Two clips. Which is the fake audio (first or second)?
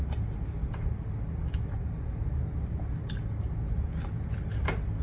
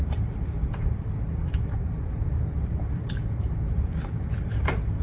second